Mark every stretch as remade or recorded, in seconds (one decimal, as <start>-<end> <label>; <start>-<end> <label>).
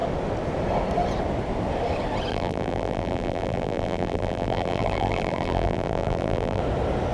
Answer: 0.0-2.3 recorded; 2.3-6.6 remade; 6.6-7.1 recorded